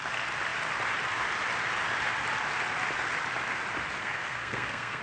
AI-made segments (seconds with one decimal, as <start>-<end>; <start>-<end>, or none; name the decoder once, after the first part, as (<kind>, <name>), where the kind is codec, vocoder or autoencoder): 4.0-5.0 (codec, SNAC)